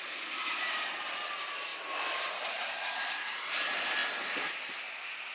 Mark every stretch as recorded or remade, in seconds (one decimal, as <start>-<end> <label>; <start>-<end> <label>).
0.0-1.7 recorded; 1.7-2.4 remade; 2.4-5.3 recorded